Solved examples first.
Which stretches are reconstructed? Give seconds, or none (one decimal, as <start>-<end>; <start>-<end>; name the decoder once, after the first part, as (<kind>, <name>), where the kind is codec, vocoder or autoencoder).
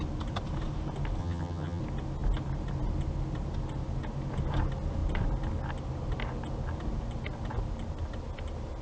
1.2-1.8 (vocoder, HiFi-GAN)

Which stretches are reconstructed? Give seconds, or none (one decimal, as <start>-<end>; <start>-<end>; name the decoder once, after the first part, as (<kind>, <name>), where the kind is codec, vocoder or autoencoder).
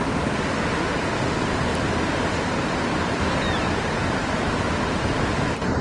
1.7-5.2 (vocoder, BigVGAN v2)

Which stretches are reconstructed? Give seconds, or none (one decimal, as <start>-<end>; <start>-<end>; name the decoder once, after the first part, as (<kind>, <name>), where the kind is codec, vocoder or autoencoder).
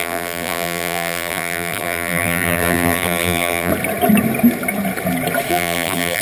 0.0-3.7 (vocoder, BigVGAN v2); 5.5-6.2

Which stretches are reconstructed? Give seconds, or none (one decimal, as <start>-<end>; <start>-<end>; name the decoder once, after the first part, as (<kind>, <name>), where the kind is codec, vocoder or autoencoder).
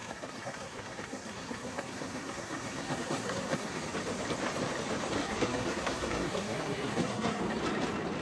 0.0-3.8 (codec, SNAC); 5.2-7.4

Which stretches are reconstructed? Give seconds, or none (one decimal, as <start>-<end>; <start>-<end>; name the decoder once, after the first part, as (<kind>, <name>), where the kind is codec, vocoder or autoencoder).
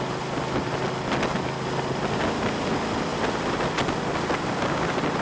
none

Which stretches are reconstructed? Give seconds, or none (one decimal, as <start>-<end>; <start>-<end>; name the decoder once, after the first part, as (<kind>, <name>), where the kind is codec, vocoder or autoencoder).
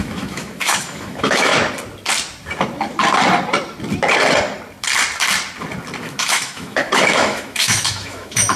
0.0-1.5 (autoencoder, DAC-VAE); 6.0-8.6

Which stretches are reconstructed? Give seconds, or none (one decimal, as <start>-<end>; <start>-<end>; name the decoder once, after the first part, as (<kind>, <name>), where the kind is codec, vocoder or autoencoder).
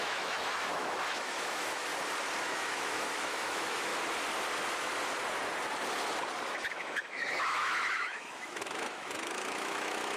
0.0-1.9 (autoencoder, DAC-VAE); 2.4-3.9; 6.7-10.2